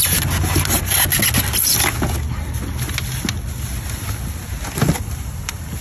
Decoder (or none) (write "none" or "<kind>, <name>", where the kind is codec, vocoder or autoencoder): none